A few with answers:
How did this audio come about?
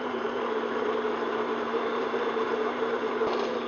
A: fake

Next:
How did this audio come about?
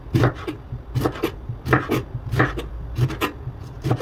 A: fake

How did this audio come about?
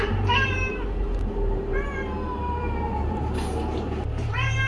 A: fake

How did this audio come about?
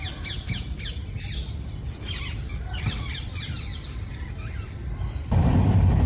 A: fake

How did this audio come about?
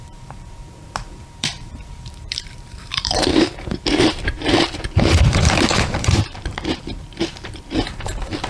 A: fake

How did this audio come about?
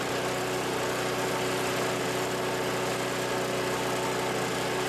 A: real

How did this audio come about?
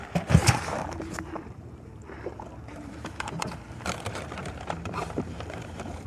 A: fake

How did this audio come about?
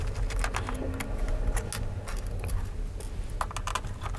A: real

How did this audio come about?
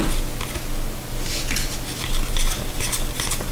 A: real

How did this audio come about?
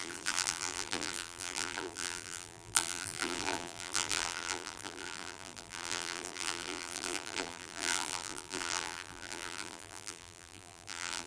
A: fake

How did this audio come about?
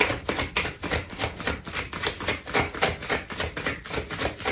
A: real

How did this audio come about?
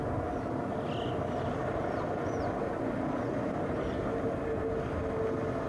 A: real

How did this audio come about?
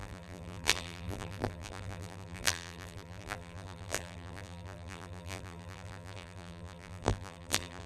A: fake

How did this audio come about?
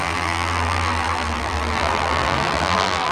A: fake